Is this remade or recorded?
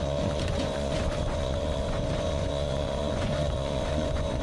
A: remade